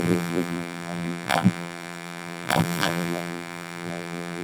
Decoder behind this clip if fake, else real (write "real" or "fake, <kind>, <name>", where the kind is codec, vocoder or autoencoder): fake, vocoder, BigVGAN v2